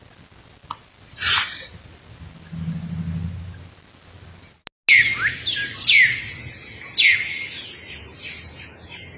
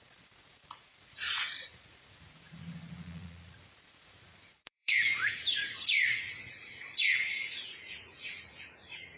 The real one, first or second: first